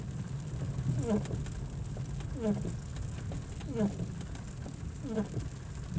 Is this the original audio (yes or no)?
yes